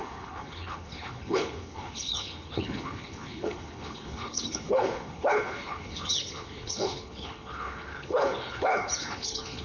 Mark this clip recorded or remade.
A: remade